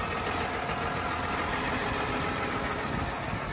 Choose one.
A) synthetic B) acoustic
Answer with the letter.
B